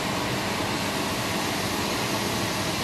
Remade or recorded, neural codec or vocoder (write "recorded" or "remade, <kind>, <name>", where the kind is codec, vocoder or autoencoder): recorded